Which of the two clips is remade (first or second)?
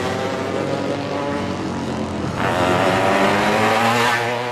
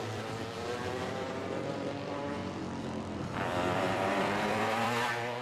second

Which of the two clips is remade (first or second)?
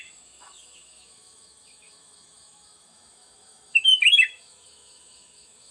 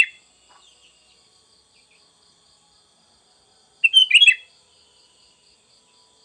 first